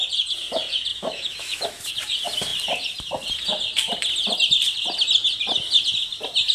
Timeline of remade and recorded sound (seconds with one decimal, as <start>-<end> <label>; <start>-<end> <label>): 0.0-0.9 recorded; 0.9-1.9 remade; 1.9-6.5 recorded